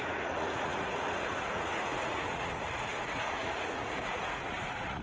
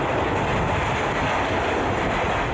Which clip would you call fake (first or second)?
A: first